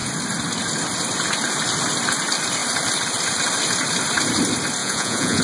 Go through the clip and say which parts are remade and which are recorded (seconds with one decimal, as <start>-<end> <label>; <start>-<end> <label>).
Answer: 0.0-4.8 recorded; 4.8-5.4 remade